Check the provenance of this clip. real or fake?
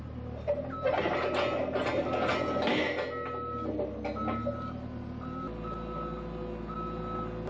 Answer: real